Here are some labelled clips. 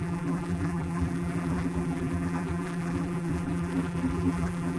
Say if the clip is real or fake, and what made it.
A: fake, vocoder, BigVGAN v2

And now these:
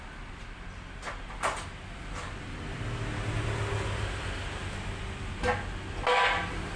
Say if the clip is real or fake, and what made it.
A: real